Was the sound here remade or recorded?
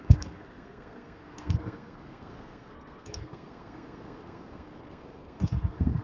remade